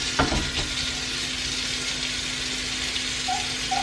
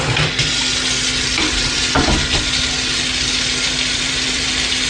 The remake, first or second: second